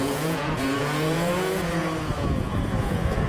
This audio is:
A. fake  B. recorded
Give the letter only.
A